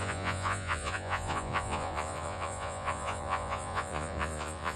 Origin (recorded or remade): remade